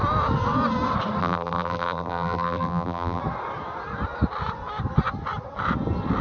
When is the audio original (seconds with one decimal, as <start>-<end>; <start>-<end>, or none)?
0.0-1.2; 3.2-6.2